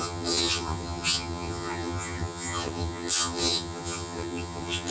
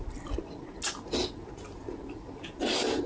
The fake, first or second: first